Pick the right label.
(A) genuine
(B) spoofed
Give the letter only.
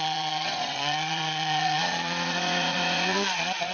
B